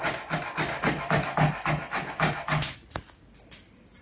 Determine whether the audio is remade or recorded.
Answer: recorded